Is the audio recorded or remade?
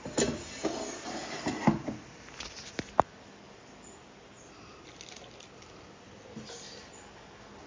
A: recorded